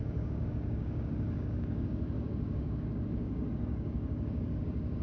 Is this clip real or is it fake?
fake